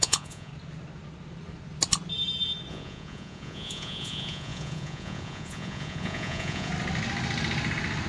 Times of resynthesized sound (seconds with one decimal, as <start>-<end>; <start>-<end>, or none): 0.0-0.5; 2.7-6.7

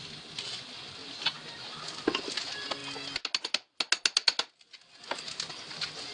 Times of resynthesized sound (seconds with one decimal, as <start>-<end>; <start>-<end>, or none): none

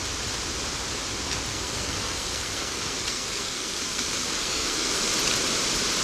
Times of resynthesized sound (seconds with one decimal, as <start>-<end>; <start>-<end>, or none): 1.5-5.1

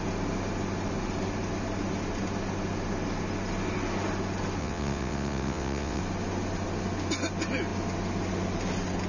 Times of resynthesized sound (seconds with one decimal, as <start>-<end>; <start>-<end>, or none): 4.6-6.0

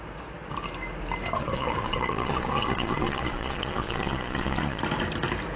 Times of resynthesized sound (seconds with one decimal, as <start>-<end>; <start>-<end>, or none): 1.4-4.8

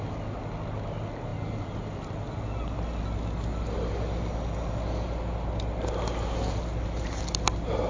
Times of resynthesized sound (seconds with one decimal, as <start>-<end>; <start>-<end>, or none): none

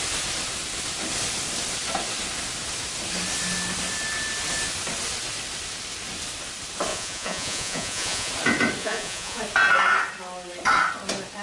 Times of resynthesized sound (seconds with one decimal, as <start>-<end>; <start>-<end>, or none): 6.9-8.3; 8.8-9.4

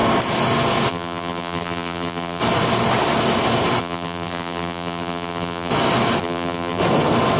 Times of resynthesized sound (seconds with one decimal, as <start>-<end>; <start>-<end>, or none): 0.9-2.4; 3.8-5.7; 6.2-6.8